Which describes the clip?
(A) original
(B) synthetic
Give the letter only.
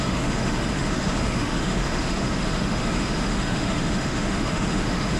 B